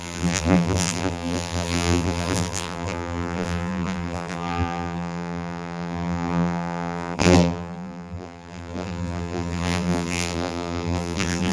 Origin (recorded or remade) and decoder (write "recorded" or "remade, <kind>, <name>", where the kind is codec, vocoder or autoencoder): remade, vocoder, BigVGAN v2